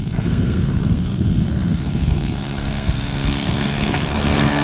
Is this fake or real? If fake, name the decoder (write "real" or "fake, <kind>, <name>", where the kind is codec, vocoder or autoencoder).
fake, codec, SNAC